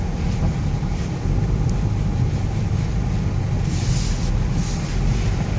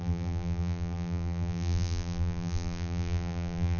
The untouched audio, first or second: first